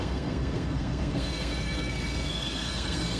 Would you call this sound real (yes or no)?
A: no